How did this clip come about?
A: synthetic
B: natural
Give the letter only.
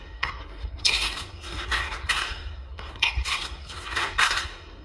A